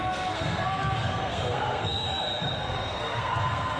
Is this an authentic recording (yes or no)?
no